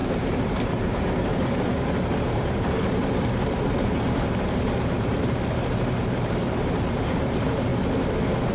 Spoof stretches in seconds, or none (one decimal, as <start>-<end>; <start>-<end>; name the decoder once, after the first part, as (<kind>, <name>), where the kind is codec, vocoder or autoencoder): 0.0-7.7 (vocoder, BigVGAN v2)